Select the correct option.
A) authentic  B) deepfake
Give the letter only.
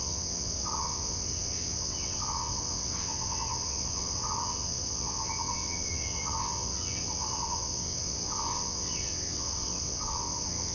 B